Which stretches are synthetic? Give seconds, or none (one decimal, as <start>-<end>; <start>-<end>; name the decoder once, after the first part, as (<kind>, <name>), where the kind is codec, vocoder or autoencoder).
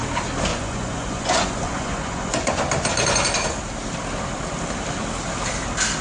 0.5-2.6 (vocoder, Vocos)